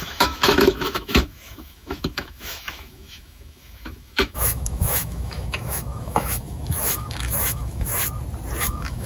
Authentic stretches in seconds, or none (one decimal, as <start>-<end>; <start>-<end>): 8.0-8.6